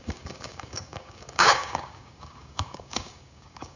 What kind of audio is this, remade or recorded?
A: remade